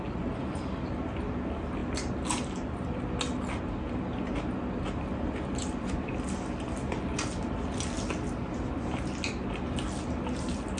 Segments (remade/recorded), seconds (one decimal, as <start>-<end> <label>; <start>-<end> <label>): 0.0-10.8 recorded